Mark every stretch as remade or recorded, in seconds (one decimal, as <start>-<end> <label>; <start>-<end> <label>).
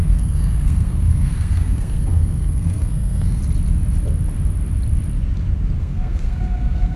0.0-3.4 remade; 3.4-5.8 recorded; 5.8-7.0 remade